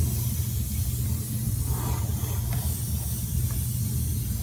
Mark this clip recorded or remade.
recorded